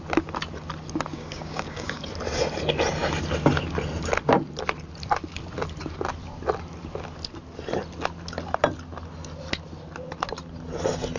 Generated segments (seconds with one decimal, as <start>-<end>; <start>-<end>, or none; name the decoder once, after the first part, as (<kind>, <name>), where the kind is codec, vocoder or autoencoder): 1.1-2.0 (codec, DAC)